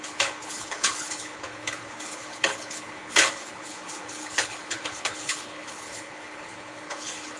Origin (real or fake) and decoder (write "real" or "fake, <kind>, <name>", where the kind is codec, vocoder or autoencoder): fake, codec, HILCodec